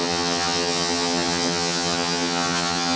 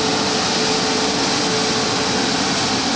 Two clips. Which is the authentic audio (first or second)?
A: second